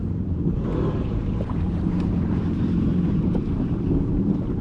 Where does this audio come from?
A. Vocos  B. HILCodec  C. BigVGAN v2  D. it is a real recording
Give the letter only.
C